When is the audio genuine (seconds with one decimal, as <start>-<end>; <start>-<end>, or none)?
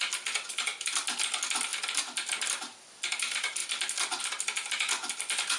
0.0-5.6